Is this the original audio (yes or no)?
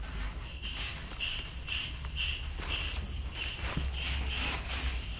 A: yes